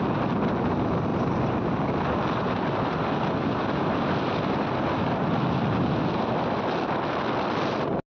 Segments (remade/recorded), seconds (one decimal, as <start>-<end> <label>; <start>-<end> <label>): 0.0-8.1 recorded